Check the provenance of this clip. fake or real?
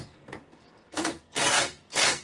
fake